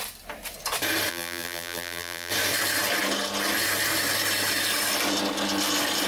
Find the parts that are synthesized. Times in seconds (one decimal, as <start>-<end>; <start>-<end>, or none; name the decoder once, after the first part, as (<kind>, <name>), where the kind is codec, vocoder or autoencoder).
1.1-2.3 (vocoder, BigVGAN v2)